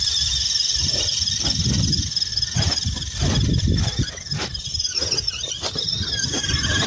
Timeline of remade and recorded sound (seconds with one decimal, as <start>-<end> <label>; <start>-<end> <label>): 0.0-6.9 recorded